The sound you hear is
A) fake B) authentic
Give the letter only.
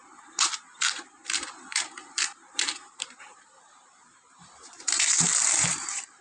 A